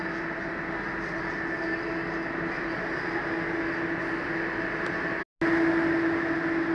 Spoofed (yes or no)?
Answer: no